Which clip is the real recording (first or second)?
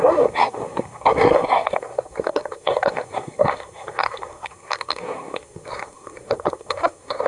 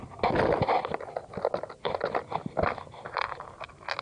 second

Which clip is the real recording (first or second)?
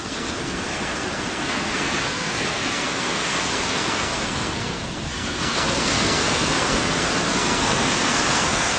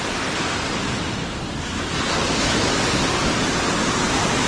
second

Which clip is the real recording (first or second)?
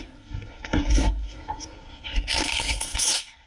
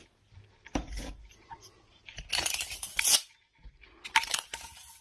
second